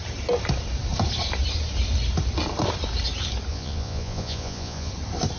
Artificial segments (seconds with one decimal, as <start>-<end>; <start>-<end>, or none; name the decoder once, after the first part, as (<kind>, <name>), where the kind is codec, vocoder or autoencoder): 3.5-4.9 (vocoder, Vocos)